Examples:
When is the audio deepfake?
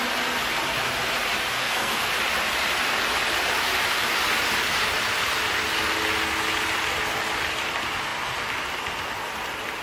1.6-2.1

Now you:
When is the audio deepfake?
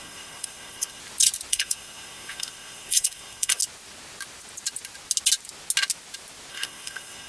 0.0-1.0; 1.5-3.6; 6.5-7.3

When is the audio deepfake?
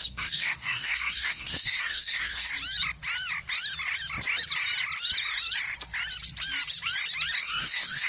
0.0-2.5; 7.4-8.1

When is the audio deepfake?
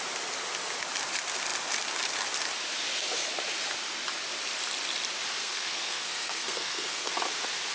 5.4-7.1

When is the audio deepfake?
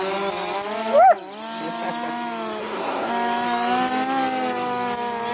2.6-3.1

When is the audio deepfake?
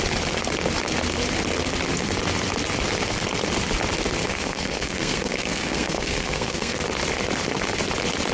4.2-6.8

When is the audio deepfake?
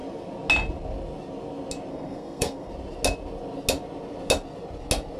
1.9-2.7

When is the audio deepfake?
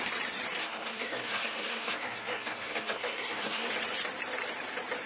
0.6-3.7